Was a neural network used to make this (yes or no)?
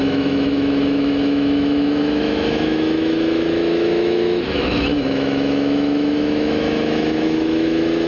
yes